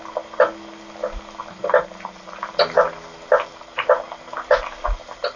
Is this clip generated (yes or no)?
no